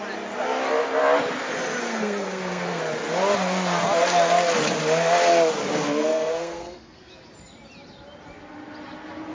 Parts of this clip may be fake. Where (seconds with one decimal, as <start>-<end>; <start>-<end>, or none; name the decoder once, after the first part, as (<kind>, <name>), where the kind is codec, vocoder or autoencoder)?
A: 1.8-2.8 (codec, SNAC); 6.0-7.1